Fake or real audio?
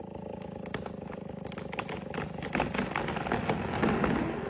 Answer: real